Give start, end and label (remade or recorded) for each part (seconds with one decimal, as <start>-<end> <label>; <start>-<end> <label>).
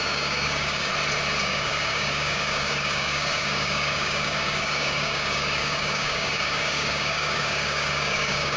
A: 0.0-0.9 remade; 0.9-1.4 recorded; 1.4-8.6 remade